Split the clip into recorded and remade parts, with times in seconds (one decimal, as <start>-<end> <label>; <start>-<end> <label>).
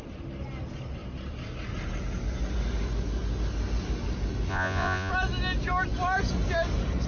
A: 0.0-4.5 recorded; 4.5-5.1 remade; 5.1-7.1 recorded